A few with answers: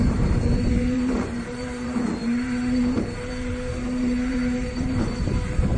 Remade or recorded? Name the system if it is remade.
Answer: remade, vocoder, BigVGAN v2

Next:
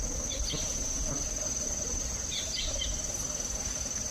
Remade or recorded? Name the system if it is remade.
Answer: recorded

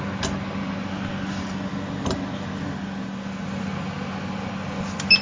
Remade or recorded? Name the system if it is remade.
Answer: recorded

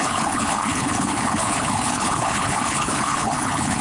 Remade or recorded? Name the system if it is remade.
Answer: remade, codec, HILCodec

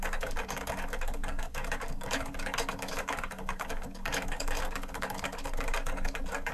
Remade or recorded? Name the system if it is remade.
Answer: remade, codec, DAC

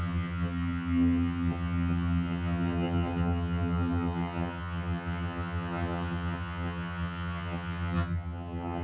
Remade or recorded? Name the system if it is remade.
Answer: remade, vocoder, HiFi-GAN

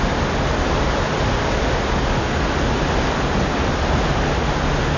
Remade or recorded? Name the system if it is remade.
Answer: recorded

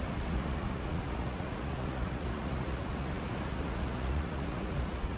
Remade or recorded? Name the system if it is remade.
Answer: remade, vocoder, Vocos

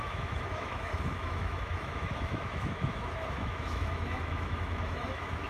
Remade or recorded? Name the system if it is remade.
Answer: remade, autoencoder, DAC-VAE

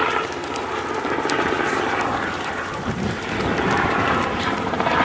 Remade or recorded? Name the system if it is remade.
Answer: remade, vocoder, BigVGAN v2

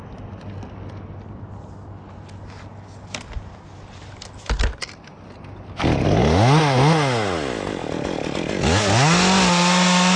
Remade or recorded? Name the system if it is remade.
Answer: recorded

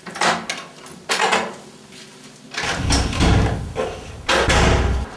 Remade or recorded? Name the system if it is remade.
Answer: recorded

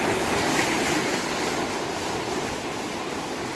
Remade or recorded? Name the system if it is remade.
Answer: recorded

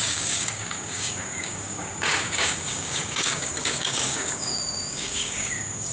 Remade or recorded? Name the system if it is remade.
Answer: remade, codec, DAC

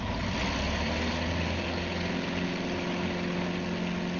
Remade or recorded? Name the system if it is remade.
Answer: recorded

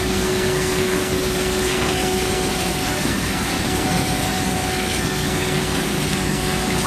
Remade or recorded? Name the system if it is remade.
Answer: remade, codec, SNAC